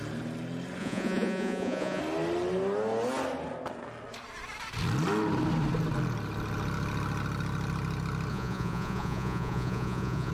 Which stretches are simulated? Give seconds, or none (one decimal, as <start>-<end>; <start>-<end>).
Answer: 0.8-2.0; 8.3-10.3